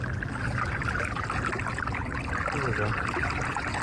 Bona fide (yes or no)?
yes